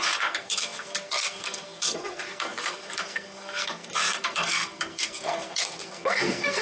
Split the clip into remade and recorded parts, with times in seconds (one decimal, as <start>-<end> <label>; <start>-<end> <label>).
0.0-6.6 remade